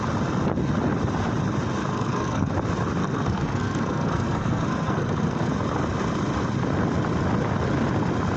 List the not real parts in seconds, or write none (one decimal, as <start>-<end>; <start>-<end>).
1.9-2.5; 3.0-5.5